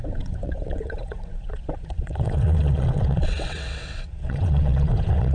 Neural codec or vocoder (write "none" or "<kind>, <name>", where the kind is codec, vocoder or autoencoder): vocoder, WaveNeXt